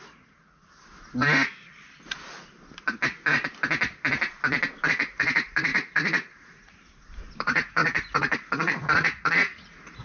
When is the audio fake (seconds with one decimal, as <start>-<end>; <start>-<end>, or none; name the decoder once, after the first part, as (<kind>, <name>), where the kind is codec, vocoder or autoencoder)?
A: 0.0-0.6 (vocoder, Vocos); 4.9-10.0